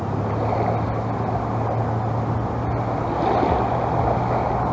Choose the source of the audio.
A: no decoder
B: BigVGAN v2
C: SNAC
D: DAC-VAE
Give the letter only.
A